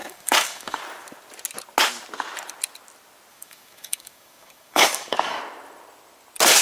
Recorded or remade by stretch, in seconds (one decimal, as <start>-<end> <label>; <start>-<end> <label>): 0.0-0.8 remade; 0.8-3.3 recorded; 3.3-5.4 remade; 5.4-6.6 recorded